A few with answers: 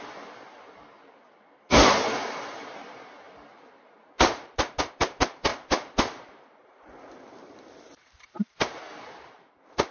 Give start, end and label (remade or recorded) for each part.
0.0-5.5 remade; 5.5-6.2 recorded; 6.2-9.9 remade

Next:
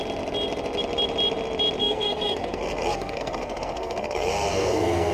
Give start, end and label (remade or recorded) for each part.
0.0-1.8 recorded; 1.8-5.1 remade

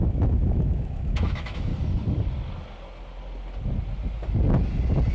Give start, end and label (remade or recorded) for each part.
0.0-1.7 remade; 1.7-5.1 recorded

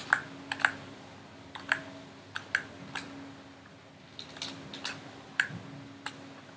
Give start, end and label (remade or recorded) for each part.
0.0-6.6 recorded

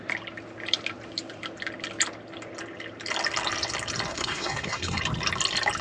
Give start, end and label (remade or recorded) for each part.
0.0-4.1 recorded; 4.1-5.0 remade; 5.0-5.8 recorded